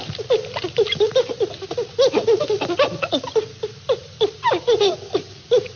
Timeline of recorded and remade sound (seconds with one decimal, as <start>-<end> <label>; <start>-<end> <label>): 0.0-5.8 recorded